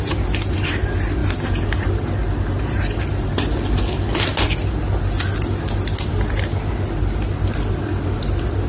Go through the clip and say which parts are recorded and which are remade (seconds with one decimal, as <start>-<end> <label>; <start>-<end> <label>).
0.0-1.2 recorded; 1.2-3.0 remade; 3.0-8.7 recorded